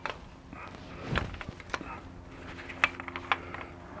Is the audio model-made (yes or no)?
no